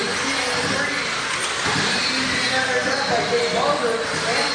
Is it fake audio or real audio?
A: real